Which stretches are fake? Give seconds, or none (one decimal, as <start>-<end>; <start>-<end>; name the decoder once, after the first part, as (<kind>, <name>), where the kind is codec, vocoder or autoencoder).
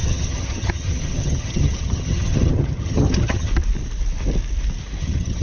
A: 0.0-3.5 (vocoder, HiFi-GAN); 5.0-5.4